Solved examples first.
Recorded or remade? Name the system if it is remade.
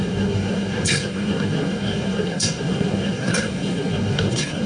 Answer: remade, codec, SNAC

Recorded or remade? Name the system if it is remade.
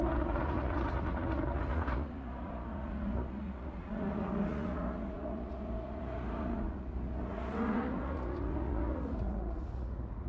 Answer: remade, vocoder, Vocos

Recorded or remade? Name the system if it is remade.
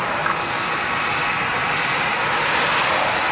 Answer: recorded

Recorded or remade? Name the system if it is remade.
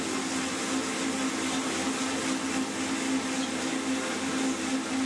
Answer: recorded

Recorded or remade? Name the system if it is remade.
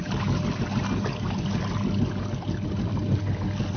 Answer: recorded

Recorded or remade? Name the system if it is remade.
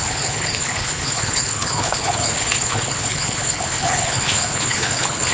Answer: remade, codec, HILCodec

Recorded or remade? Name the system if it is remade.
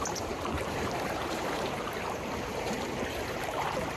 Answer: remade, vocoder, BigVGAN v2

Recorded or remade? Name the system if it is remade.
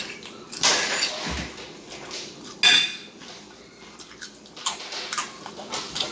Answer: recorded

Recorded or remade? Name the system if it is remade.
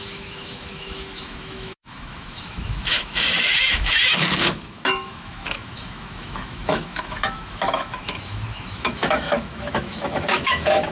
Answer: remade, autoencoder, DAC-VAE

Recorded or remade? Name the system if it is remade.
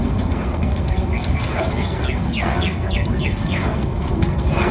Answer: remade, codec, SNAC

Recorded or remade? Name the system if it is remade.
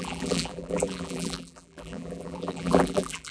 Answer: remade, vocoder, BigVGAN v2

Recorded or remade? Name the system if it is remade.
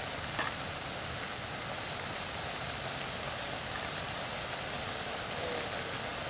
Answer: recorded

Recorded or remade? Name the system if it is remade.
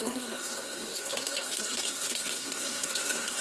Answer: remade, codec, SNAC